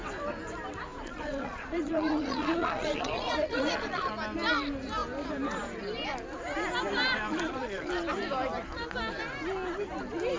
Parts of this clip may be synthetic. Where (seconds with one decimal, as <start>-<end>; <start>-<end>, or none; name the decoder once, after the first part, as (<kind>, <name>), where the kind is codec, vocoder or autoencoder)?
0.9-4.1 (vocoder, Vocos); 7.3-7.9